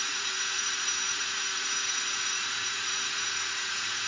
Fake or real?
fake